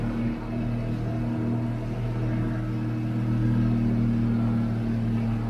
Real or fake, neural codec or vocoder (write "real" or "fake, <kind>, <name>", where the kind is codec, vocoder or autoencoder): real